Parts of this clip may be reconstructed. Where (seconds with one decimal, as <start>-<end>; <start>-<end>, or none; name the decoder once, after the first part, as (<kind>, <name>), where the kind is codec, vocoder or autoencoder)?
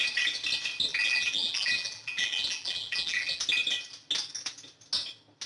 0.9-3.4 (vocoder, BigVGAN v2)